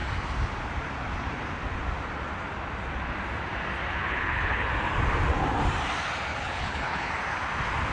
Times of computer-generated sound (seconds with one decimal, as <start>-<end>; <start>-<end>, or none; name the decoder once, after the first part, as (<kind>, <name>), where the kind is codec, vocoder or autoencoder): 3.9-4.7 (codec, HILCodec); 6.3-7.1